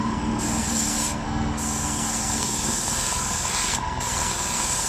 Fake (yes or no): yes